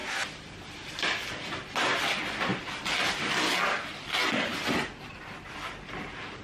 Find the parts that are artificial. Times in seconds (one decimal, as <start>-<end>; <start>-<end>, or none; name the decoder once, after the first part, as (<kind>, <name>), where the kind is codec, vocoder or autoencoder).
none